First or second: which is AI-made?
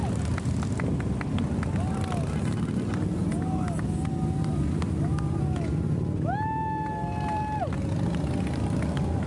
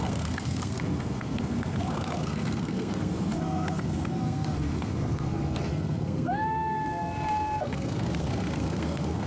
second